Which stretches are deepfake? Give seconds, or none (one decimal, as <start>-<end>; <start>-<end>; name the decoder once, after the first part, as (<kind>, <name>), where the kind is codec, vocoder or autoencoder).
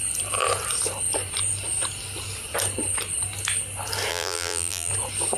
4.1-4.9 (vocoder, BigVGAN v2)